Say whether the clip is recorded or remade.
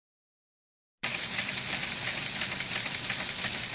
recorded